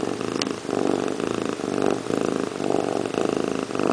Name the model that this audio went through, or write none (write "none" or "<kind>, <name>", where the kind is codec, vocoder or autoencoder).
none